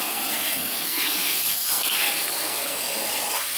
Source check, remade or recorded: remade